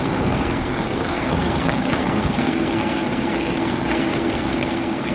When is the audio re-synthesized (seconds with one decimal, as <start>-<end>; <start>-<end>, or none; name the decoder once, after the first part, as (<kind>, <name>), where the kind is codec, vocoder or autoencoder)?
0.0-5.1 (codec, SNAC)

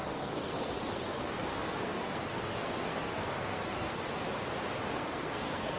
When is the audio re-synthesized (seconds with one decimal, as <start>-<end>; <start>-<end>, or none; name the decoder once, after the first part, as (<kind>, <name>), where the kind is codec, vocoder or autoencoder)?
0.0-4.0 (codec, SNAC); 4.9-5.8

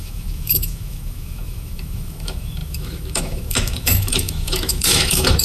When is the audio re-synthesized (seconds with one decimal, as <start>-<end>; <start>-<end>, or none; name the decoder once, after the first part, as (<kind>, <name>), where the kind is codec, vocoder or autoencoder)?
0.0-5.4 (autoencoder, DAC-VAE)